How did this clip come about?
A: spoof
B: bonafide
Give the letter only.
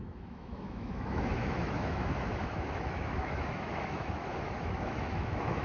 A